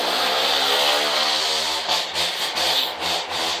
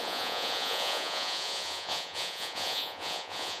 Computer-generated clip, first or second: second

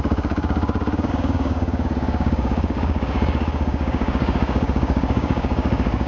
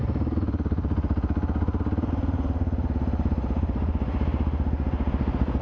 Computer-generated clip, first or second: first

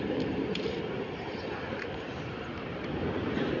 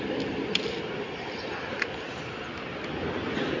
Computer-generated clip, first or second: first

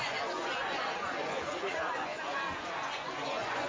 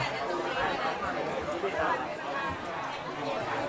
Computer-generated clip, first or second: first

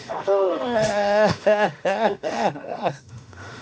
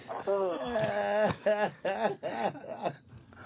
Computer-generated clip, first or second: first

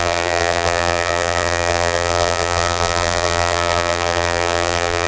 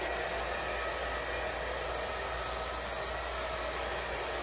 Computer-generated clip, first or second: first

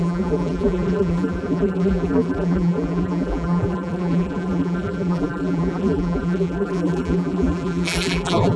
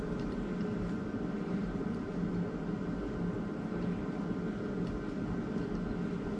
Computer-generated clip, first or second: first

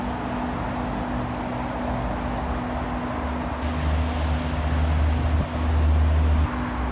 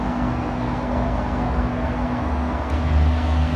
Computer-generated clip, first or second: second